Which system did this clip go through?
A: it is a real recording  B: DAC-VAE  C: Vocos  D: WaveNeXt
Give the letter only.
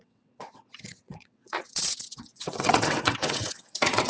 D